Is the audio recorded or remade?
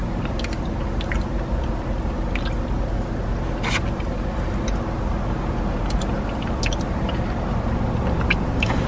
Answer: recorded